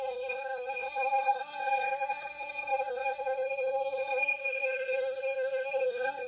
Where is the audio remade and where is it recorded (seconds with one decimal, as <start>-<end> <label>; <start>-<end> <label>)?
0.0-6.3 remade